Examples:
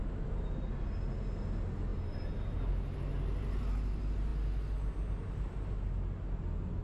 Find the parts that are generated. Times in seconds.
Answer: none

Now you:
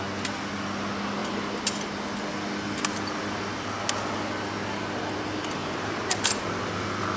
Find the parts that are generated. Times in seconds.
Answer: 5.6-6.8 (vocoder, BigVGAN v2)